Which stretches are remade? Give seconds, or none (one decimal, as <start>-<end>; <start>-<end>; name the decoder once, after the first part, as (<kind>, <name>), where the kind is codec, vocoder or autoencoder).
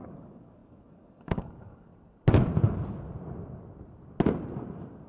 0.0-1.9 (codec, DAC)